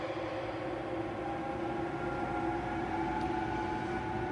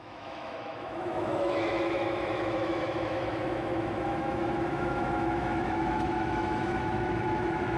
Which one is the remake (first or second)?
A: second